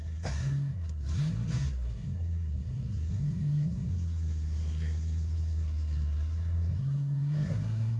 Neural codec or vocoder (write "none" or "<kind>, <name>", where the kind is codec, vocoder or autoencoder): codec, SNAC